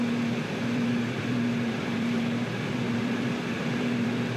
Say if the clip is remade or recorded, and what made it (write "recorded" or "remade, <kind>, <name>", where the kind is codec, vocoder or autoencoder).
remade, vocoder, BigVGAN v2